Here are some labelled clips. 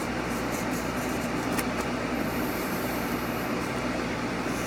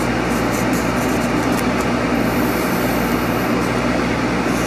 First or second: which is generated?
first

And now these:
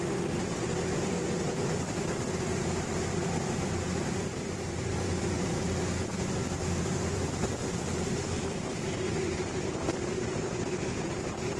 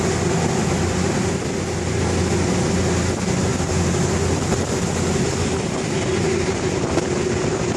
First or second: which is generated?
first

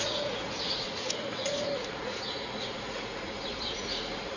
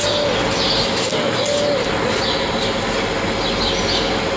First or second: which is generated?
first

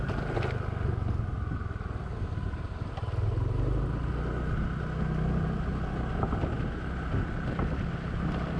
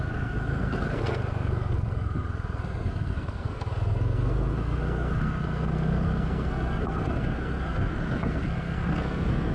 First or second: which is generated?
second